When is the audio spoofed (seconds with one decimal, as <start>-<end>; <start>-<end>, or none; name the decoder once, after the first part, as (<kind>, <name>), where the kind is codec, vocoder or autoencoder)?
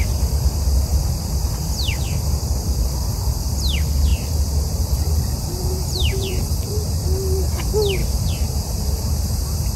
4.1-7.0 (vocoder, BigVGAN v2); 8.0-9.1